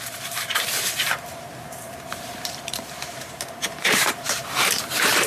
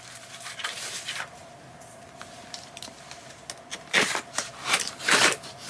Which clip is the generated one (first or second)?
first